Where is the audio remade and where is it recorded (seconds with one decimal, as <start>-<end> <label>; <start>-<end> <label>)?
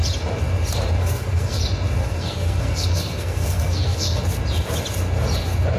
0.0-1.0 recorded; 1.0-1.6 remade; 1.6-2.0 recorded; 2.0-4.2 remade; 4.2-5.8 recorded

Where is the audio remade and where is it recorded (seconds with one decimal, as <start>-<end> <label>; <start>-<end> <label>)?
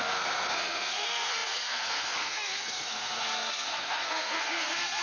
0.0-5.0 remade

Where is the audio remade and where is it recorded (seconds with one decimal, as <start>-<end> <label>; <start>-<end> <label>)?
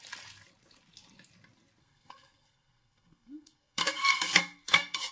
0.0-1.8 recorded; 1.8-5.1 remade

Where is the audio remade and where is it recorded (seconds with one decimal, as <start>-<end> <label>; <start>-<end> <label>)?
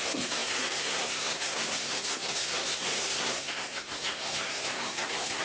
0.0-5.4 remade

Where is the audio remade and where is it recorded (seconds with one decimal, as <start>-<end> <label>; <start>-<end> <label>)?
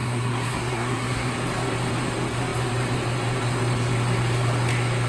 0.0-1.3 remade; 1.3-5.1 recorded